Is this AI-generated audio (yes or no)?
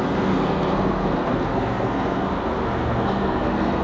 yes